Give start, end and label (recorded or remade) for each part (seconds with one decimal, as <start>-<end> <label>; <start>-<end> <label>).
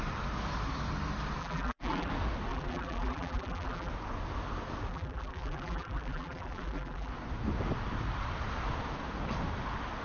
0.0-1.4 recorded; 1.4-2.1 remade; 2.1-2.5 recorded; 2.5-3.9 remade; 3.9-4.9 recorded; 4.9-7.1 remade; 7.1-10.0 recorded